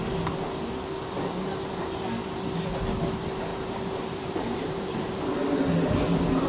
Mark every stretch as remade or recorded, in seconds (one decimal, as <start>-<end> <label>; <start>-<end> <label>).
0.0-3.5 recorded; 3.5-5.2 remade; 5.2-6.5 recorded